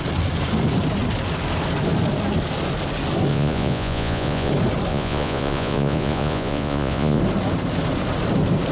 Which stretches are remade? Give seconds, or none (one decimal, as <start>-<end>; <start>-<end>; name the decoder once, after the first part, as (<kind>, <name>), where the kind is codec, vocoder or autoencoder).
3.3-4.5 (vocoder, Vocos); 4.9-7.2